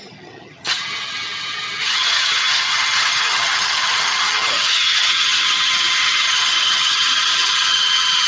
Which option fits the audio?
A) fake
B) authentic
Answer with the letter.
A